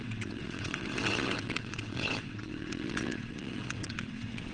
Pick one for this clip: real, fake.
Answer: fake